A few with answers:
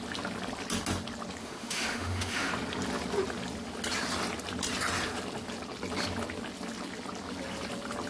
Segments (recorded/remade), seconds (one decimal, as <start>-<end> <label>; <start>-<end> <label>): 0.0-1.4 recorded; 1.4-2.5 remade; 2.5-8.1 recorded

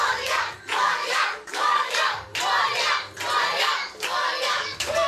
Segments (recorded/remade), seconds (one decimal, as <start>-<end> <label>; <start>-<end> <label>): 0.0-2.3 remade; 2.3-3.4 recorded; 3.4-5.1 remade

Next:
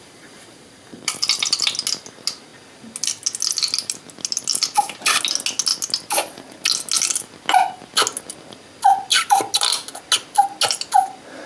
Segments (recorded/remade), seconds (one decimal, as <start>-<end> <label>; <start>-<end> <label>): 0.0-11.5 recorded

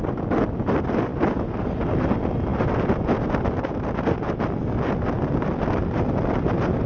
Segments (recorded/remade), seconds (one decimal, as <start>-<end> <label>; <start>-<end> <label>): 0.0-6.9 recorded